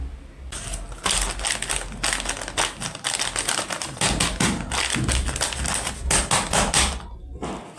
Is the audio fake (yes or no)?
no